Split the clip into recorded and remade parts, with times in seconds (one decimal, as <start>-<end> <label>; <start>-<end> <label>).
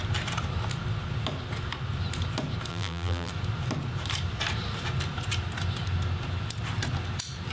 0.0-2.7 recorded; 2.7-3.3 remade; 3.3-7.5 recorded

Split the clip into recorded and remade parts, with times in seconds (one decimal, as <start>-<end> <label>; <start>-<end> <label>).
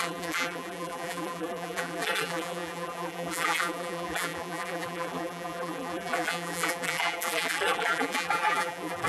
0.0-9.1 remade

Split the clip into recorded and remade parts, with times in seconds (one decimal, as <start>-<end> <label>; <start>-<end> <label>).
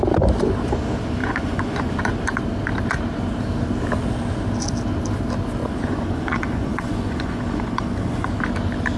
0.0-1.2 recorded; 1.2-1.9 remade; 1.9-5.6 recorded; 5.6-8.3 remade; 8.3-9.0 recorded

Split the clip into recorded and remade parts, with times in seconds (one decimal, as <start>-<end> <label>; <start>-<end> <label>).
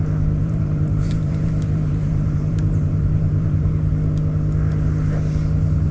0.0-0.4 recorded; 0.4-3.9 remade; 3.9-5.9 recorded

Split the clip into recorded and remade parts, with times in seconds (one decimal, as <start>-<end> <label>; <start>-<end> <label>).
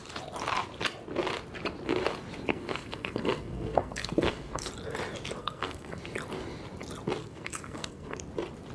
0.0-2.5 recorded; 2.5-4.7 remade; 4.7-5.4 recorded; 5.4-6.0 remade; 6.0-7.2 recorded; 7.2-8.2 remade; 8.2-8.7 recorded